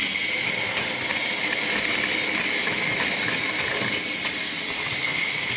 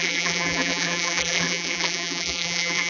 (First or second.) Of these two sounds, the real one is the first